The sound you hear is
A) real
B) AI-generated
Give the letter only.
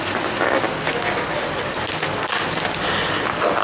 A